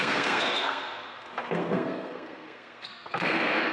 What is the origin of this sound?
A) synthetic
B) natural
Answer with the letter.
A